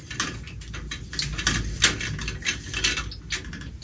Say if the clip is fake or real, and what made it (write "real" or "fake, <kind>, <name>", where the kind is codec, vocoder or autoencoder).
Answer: real